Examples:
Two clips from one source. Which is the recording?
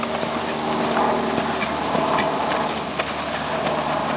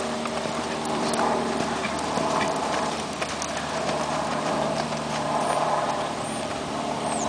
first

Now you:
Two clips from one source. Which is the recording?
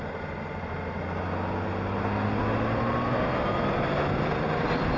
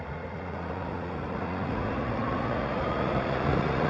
first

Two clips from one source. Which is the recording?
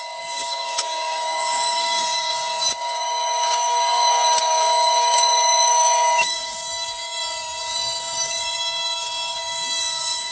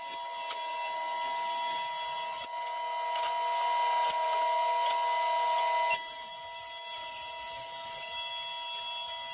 second